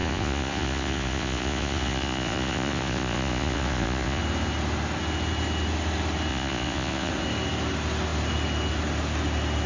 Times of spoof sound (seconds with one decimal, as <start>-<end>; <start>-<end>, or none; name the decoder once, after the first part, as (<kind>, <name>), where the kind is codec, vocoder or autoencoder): 0.0-4.2 (vocoder, Vocos); 6.3-7.1